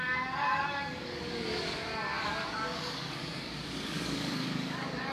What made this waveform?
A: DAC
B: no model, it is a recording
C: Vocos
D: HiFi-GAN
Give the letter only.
A